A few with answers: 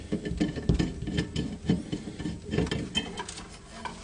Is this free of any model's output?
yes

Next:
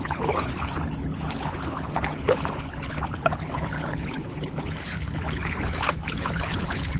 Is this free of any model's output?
no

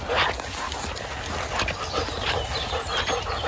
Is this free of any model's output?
yes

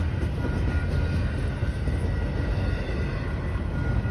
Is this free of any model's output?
yes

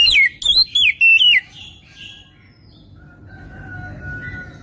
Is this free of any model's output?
yes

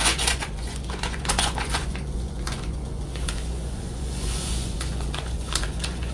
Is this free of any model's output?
no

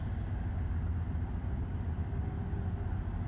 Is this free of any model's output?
yes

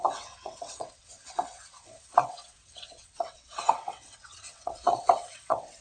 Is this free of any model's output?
no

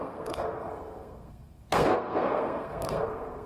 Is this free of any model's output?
no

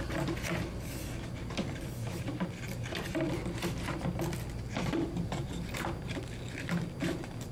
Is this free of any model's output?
yes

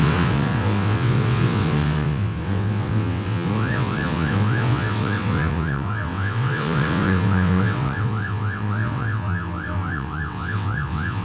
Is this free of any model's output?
no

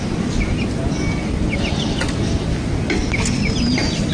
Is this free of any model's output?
yes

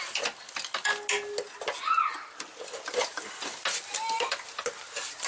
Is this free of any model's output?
yes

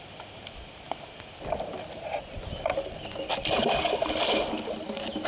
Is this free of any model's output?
yes